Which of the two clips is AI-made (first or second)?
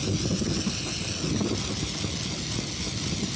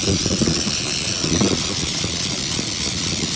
second